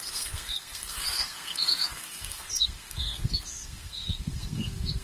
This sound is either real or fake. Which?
fake